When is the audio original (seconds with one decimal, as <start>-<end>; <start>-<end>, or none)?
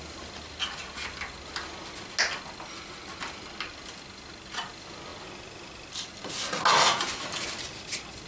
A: 0.0-8.3